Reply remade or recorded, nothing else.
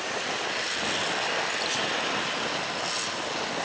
recorded